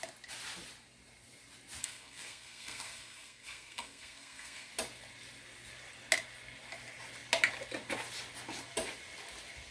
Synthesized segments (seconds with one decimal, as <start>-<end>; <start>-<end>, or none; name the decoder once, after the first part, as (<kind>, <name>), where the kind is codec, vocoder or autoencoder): 1.8-4.7 (codec, SNAC)